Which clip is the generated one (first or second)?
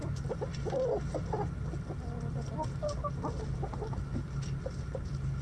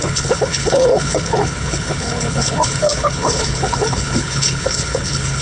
second